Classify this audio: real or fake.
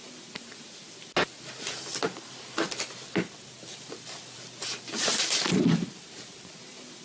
real